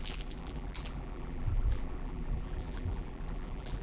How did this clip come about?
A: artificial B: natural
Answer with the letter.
A